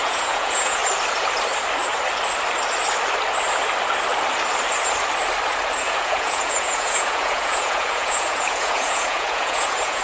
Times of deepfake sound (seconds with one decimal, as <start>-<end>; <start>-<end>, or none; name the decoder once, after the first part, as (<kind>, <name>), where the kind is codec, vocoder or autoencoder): 0.0-0.8 (vocoder, Vocos); 5.8-10.0